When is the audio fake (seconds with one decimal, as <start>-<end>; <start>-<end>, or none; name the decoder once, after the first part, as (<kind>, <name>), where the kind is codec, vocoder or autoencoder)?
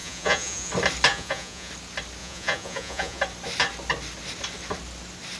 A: 0.0-0.7 (vocoder, Vocos); 1.1-1.7; 2.2-3.2